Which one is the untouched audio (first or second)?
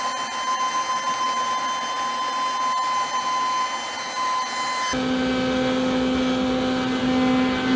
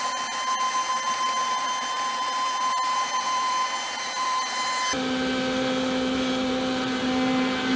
first